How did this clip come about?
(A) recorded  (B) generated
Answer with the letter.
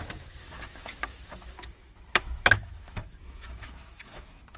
B